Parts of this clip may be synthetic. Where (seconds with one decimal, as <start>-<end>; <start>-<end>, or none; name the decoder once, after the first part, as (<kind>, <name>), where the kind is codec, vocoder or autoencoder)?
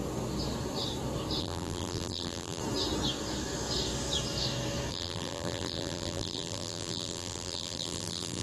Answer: 1.4-2.6 (vocoder, BigVGAN v2); 4.9-8.4